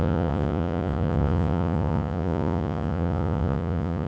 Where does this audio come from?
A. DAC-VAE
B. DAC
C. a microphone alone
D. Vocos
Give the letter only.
D